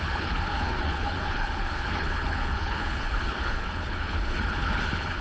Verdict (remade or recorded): remade